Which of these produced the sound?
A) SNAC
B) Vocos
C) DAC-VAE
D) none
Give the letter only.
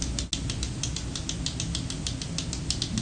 D